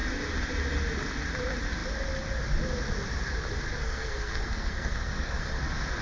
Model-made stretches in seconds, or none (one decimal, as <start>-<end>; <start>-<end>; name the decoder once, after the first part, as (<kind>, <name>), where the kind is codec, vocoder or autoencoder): 3.8-5.6 (codec, SNAC)